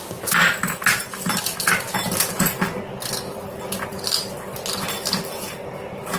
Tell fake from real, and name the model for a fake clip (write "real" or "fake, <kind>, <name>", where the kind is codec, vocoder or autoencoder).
real